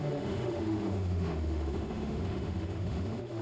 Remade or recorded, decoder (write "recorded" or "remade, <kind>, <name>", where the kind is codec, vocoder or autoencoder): remade, autoencoder, DAC-VAE